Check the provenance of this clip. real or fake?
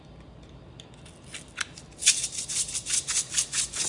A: real